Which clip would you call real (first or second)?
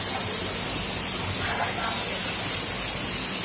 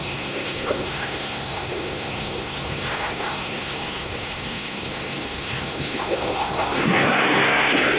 first